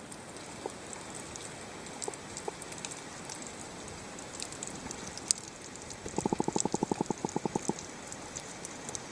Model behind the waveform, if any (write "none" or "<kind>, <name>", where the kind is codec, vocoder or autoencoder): none